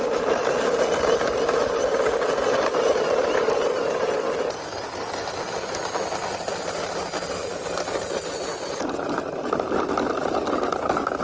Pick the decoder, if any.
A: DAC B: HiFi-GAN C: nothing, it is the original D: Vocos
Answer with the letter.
C